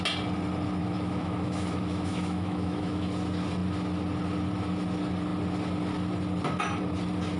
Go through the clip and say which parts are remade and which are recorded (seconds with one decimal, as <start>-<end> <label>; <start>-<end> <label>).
0.0-0.8 recorded; 0.8-3.1 remade; 3.1-7.4 recorded